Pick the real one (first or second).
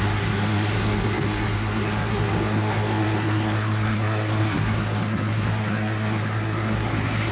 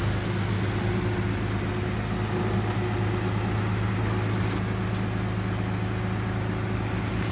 second